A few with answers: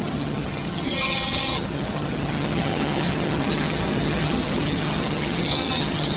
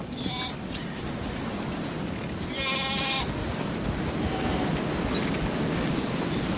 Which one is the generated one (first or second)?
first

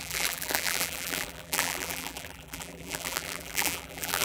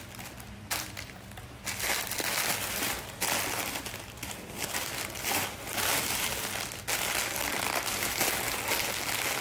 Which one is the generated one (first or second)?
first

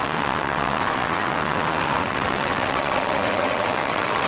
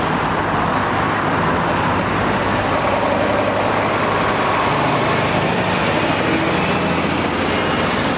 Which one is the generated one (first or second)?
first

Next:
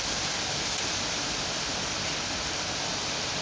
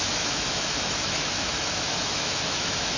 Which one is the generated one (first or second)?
second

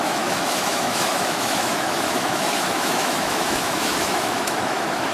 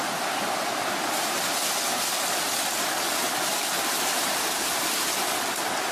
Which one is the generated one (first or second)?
first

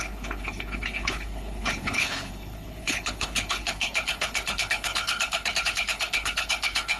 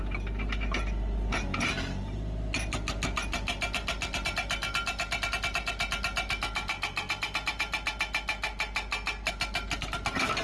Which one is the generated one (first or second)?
first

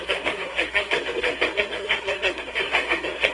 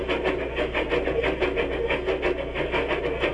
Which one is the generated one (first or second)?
first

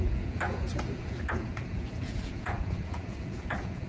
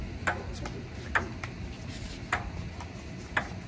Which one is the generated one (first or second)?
first